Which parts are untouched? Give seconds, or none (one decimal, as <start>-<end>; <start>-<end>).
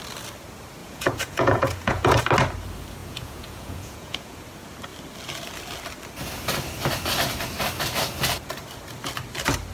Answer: 0.0-0.8; 2.2-3.0; 4.4-9.7